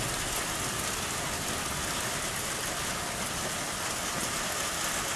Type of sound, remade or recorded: recorded